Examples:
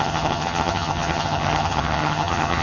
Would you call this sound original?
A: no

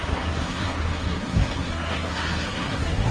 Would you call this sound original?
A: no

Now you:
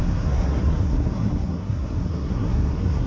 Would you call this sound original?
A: no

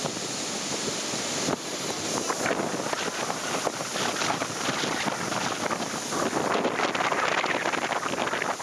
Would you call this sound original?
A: yes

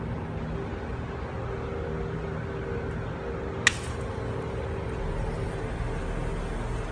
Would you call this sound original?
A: yes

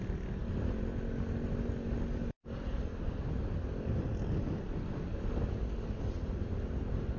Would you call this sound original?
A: yes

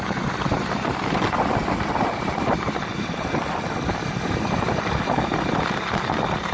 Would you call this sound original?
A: yes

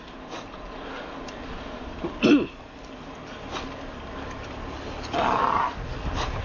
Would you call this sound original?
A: yes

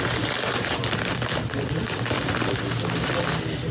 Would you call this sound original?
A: yes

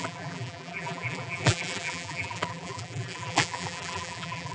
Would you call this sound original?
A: no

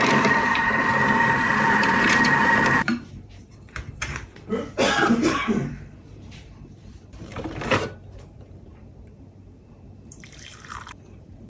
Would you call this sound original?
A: no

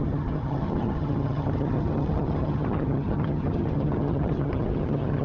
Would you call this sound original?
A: no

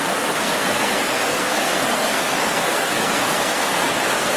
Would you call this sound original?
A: no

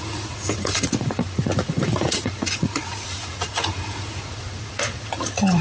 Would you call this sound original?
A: no